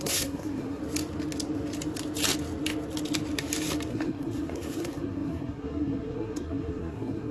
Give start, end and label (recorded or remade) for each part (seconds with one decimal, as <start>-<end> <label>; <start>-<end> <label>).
0.0-0.8 remade; 0.8-3.9 recorded; 3.9-7.3 remade